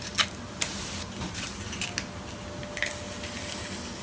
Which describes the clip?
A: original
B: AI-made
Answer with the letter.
A